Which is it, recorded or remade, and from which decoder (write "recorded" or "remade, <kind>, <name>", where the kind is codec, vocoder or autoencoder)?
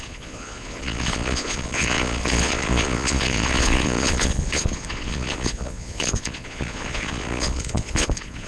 remade, vocoder, Vocos